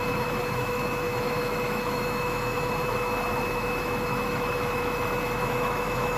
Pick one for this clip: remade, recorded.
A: remade